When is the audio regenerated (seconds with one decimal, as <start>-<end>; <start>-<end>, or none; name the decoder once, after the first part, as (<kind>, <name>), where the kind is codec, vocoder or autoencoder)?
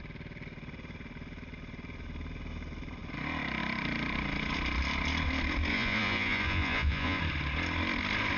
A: 5.7-7.2 (vocoder, Vocos)